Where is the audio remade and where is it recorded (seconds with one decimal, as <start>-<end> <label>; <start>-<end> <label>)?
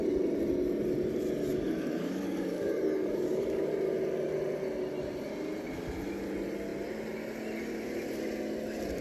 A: 0.0-1.5 recorded; 1.5-3.7 remade; 3.7-9.0 recorded